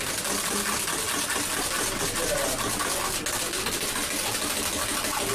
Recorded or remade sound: recorded